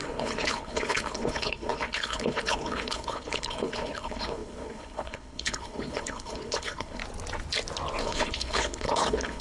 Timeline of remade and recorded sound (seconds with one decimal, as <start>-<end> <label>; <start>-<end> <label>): 0.0-7.0 remade; 7.0-8.0 recorded; 8.0-9.4 remade